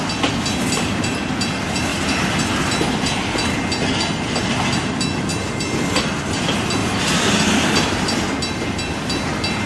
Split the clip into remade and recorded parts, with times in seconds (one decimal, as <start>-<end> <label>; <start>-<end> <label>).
0.0-1.9 recorded; 1.9-2.7 remade; 2.7-6.8 recorded; 6.8-7.3 remade; 7.3-9.7 recorded